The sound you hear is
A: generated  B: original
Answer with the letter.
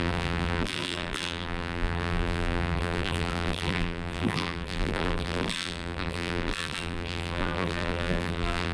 A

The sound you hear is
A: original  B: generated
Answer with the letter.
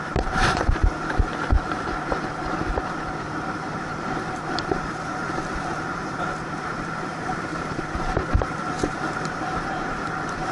B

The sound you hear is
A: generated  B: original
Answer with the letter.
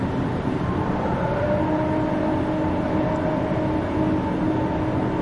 B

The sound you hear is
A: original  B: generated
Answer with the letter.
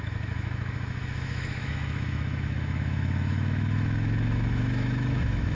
B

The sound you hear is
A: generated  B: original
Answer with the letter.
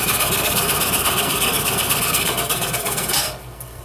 A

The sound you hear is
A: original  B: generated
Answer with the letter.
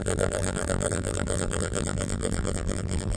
B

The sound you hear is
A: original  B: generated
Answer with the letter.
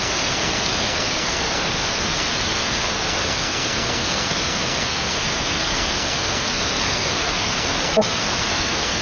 B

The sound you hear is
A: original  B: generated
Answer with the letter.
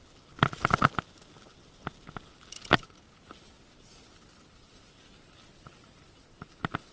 A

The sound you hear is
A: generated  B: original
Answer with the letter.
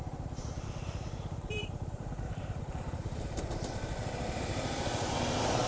A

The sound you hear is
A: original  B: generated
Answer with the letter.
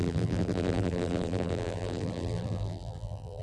B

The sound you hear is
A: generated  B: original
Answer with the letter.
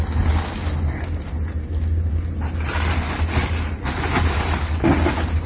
B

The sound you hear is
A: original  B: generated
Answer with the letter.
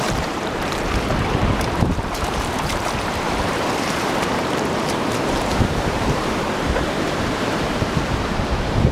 B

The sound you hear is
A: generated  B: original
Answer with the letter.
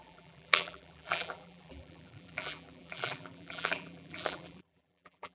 A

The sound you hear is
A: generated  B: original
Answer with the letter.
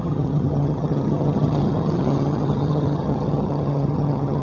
A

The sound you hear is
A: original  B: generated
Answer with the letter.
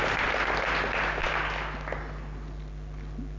A